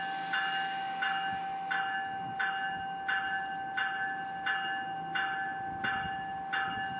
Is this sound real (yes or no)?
yes